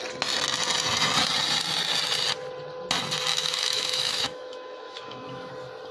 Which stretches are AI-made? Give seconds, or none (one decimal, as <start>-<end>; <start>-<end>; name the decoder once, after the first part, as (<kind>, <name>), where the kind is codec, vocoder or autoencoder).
3.3-5.5 (autoencoder, DAC-VAE)